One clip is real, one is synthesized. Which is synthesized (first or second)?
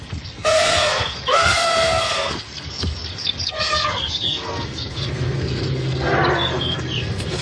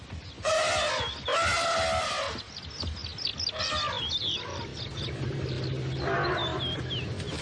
first